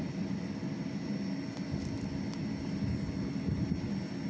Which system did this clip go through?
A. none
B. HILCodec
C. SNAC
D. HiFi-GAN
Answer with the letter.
A